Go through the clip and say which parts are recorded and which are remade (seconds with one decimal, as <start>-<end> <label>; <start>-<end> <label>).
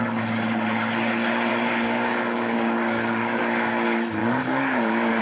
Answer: 0.0-1.5 recorded; 1.5-3.4 remade; 3.4-4.2 recorded; 4.2-5.2 remade